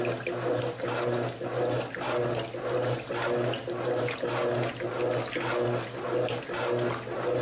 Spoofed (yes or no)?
no